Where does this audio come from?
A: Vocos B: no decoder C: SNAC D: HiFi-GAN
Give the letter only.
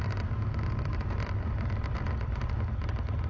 B